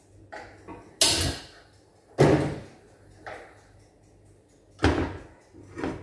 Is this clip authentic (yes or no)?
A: yes